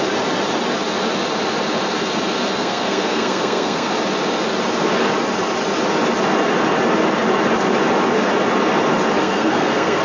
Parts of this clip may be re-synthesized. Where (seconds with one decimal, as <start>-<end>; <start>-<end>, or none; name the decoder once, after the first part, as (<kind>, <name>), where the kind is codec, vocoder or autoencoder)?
2.5-3.9 (codec, SNAC); 9.2-10.0